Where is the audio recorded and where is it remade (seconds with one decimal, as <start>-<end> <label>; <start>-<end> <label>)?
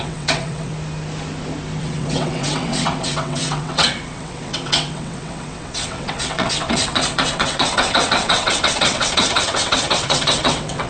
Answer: 0.0-0.7 remade; 0.7-1.8 recorded; 1.8-10.9 remade